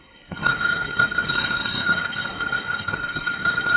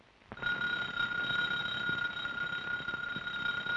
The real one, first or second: second